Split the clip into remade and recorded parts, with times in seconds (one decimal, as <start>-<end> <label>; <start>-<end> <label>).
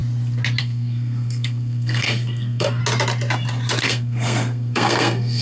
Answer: 0.0-0.6 recorded; 0.6-2.8 remade; 2.8-3.8 recorded; 3.8-5.4 remade